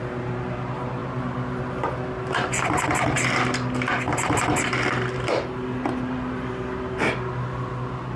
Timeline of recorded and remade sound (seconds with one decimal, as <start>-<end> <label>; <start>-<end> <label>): 0.0-8.2 remade